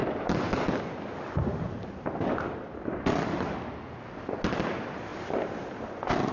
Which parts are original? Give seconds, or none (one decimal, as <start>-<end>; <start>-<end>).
0.0-6.3